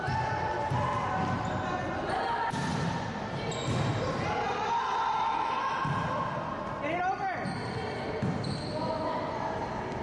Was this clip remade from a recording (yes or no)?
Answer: no